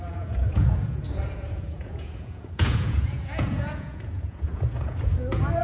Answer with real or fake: fake